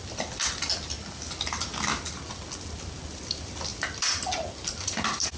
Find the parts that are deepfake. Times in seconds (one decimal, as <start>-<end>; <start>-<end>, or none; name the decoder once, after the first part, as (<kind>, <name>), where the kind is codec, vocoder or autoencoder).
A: none